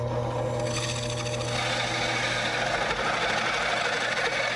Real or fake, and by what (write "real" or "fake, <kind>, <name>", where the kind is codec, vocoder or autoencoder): real